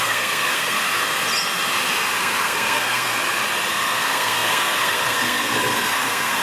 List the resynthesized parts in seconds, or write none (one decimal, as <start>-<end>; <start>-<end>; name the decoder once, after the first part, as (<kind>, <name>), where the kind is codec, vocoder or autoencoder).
0.0-1.0 (codec, SNAC); 2.2-3.1; 3.7-6.4